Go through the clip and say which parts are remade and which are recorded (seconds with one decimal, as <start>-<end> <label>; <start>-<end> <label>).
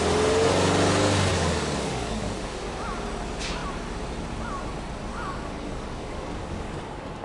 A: 0.0-1.3 recorded; 1.3-2.7 remade; 2.7-5.1 recorded; 5.1-7.2 remade